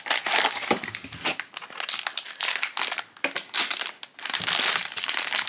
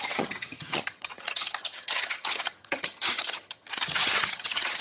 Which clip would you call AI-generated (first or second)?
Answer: second